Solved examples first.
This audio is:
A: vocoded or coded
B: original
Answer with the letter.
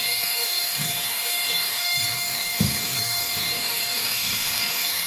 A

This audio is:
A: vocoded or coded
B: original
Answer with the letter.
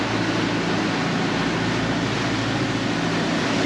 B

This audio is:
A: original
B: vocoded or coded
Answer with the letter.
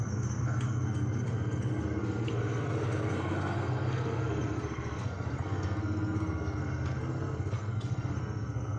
B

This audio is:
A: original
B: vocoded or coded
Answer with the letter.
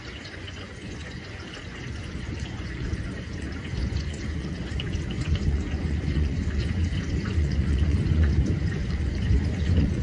B